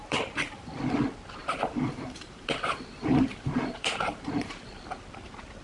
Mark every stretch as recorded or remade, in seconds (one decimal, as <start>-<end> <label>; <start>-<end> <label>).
0.0-0.8 remade; 0.8-1.4 recorded; 1.4-4.8 remade; 4.8-5.6 recorded